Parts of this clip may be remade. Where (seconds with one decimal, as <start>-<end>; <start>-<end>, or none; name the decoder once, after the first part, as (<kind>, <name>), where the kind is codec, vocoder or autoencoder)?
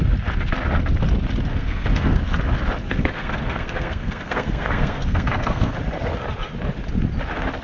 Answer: 1.5-2.2 (codec, SNAC); 2.9-5.7